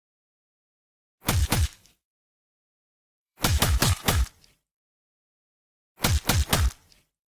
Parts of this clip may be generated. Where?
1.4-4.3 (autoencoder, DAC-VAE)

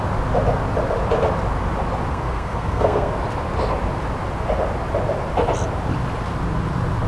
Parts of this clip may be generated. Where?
2.1-3.1 (codec, SNAC)

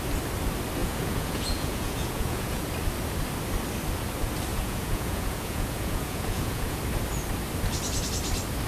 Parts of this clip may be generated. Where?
0.8-2.7 (vocoder, Vocos); 4.5-6.8